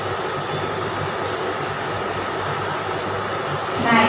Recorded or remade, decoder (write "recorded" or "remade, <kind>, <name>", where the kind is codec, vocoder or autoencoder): recorded